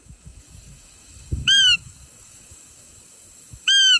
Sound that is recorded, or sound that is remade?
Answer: remade